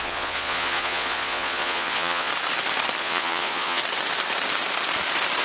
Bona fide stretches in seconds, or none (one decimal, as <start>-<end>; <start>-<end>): 2.3-3.0; 3.8-5.4